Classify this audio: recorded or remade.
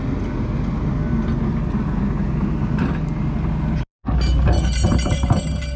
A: recorded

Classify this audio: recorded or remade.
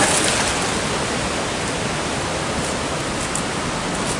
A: recorded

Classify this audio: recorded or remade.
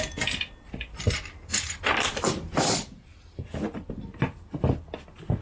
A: recorded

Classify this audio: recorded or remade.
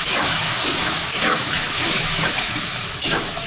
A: remade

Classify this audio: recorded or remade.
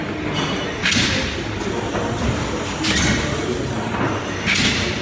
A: recorded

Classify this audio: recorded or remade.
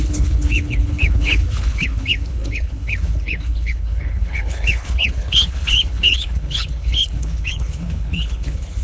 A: remade